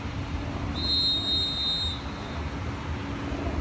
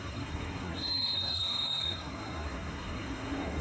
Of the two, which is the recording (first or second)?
first